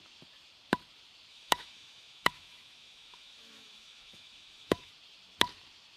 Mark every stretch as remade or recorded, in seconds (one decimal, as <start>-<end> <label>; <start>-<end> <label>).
0.0-1.3 recorded; 1.3-4.9 remade; 4.9-6.0 recorded